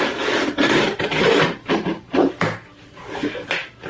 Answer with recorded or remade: remade